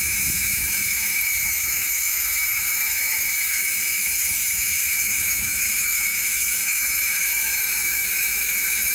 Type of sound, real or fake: fake